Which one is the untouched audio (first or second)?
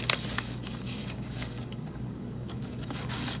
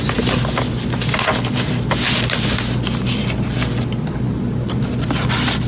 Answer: second